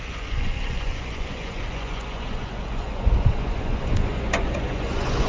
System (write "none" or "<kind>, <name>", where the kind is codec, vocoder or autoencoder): vocoder, Vocos